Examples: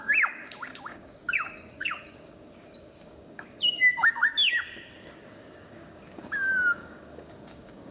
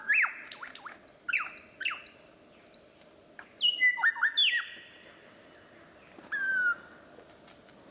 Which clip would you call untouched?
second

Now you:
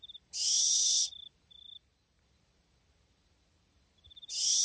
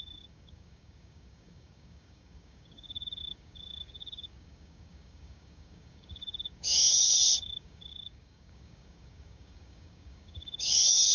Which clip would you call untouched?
first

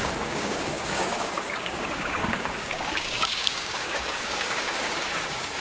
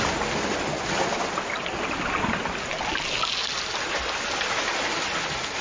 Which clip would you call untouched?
second